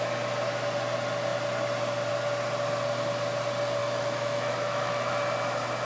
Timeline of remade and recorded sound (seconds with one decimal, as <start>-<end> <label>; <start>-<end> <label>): 0.0-3.8 recorded; 3.8-5.1 remade; 5.1-5.8 recorded